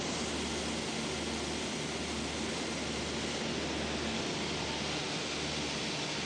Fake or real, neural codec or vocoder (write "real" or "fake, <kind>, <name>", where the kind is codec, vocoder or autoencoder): real